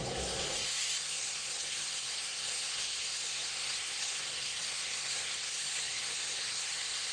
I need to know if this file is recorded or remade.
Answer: remade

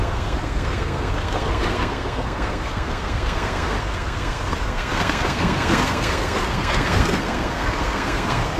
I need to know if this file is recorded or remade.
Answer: remade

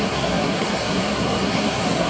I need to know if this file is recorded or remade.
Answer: remade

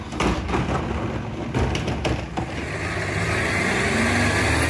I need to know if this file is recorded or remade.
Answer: recorded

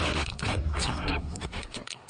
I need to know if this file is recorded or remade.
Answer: remade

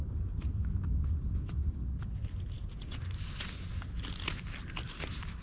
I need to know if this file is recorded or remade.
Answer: recorded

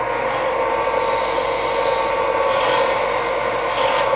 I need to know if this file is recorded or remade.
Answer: recorded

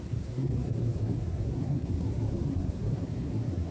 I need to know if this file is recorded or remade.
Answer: remade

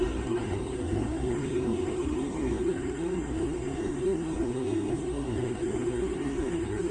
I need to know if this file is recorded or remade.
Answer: remade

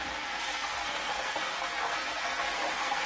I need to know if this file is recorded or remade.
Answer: remade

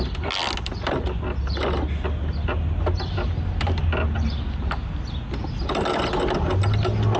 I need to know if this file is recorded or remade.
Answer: recorded